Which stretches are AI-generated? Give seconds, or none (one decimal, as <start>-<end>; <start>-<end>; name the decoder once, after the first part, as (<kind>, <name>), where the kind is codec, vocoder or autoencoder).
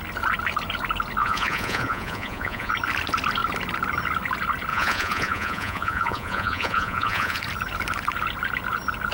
1.2-2.7 (vocoder, Vocos); 4.7-7.4